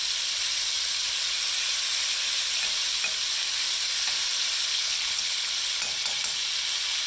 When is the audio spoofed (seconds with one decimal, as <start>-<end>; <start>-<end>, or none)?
4.7-5.5